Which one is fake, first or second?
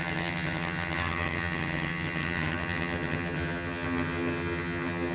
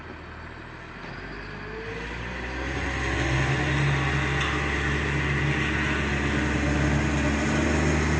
first